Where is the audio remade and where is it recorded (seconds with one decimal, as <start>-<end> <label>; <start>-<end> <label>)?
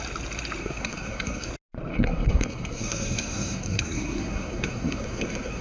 0.0-0.6 recorded; 0.6-1.5 remade; 1.5-1.9 recorded; 1.9-5.6 remade